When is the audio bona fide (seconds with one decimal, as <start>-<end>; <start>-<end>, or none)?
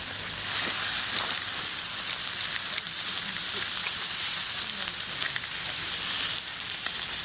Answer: 0.0-3.8; 4.6-7.2